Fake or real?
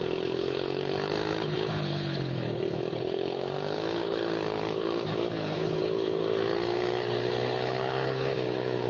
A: fake